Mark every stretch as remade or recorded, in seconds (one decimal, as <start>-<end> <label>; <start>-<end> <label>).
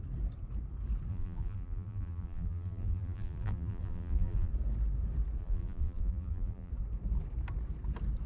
0.0-1.1 recorded; 1.1-4.5 remade; 4.5-5.4 recorded; 5.4-6.7 remade; 6.7-8.3 recorded